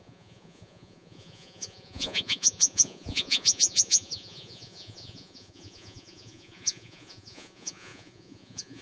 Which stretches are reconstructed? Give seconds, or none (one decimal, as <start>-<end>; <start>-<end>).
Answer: 0.0-8.8